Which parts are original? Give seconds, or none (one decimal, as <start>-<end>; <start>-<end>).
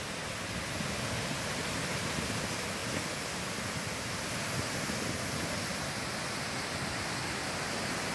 0.0-8.1